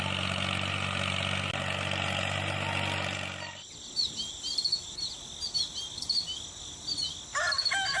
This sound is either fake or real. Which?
real